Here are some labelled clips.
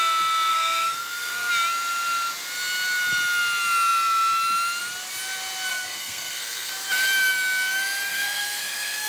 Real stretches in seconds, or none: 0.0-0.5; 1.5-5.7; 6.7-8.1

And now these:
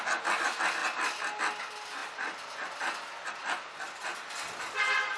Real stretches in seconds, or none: 0.0-5.2

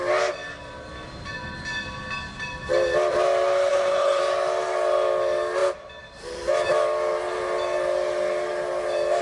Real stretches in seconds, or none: 0.0-3.7; 4.2-9.2

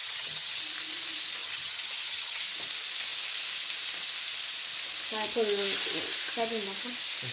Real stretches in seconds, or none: 0.6-1.4; 2.4-7.3

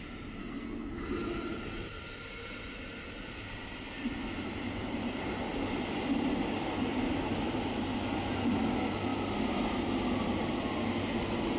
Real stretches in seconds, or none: 0.0-0.4; 0.9-11.6

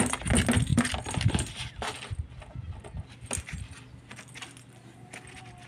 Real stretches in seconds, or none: 0.0-5.7

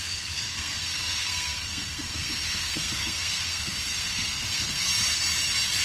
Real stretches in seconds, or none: 4.9-5.8

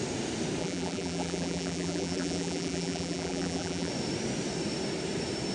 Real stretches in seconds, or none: 0.0-0.6; 3.9-5.5